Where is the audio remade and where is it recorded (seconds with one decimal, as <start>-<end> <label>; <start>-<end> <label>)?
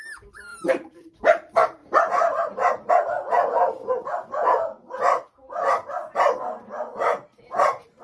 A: 0.0-0.5 recorded; 0.5-1.2 remade; 1.2-8.0 recorded